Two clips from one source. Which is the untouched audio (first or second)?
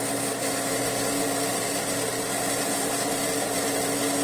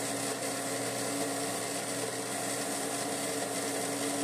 second